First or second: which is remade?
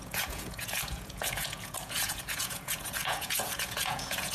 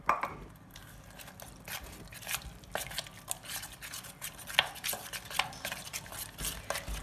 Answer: first